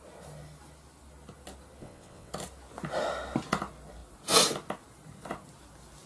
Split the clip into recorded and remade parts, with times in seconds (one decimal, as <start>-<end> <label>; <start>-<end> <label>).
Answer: 0.0-1.8 recorded; 1.8-2.3 remade; 2.3-6.1 recorded

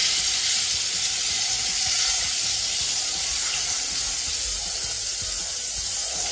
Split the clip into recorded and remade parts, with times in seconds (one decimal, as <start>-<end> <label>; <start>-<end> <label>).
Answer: 0.0-6.3 recorded

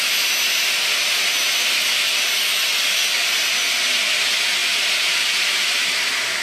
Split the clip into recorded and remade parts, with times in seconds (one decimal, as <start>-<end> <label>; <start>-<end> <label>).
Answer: 0.0-6.4 recorded

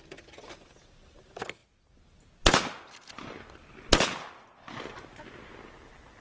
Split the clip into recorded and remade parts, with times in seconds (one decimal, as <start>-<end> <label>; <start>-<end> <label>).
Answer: 0.0-6.2 recorded